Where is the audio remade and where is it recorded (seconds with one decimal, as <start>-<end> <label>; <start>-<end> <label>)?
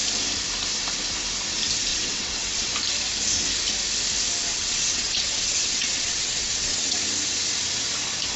0.0-1.9 recorded; 1.9-2.7 remade; 2.7-4.5 recorded; 4.5-7.0 remade; 7.0-8.4 recorded